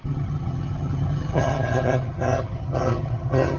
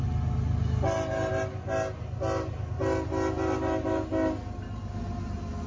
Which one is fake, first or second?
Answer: first